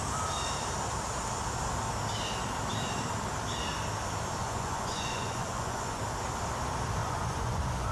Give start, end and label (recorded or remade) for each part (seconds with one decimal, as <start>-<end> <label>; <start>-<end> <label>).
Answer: 0.0-4.4 recorded; 4.4-6.0 remade; 6.0-7.0 recorded; 7.0-7.9 remade